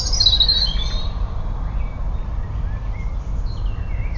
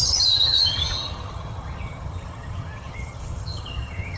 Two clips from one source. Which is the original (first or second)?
first